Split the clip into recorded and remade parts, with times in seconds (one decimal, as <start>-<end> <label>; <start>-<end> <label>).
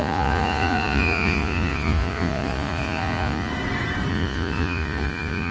0.0-3.5 remade; 3.5-4.1 recorded; 4.1-5.5 remade